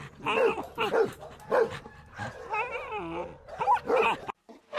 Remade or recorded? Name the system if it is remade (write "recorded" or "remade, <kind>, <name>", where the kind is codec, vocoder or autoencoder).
recorded